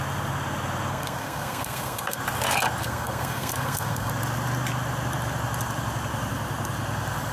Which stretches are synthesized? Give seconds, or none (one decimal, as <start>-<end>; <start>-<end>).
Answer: 0.9-2.2; 2.8-4.1